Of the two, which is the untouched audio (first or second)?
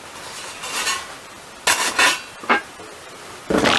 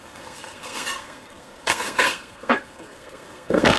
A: first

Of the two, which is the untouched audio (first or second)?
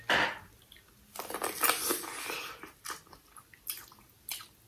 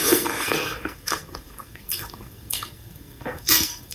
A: first